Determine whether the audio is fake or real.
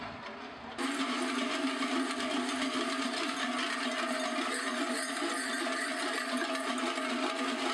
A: real